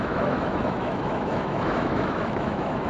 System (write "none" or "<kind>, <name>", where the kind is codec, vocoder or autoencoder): autoencoder, DAC-VAE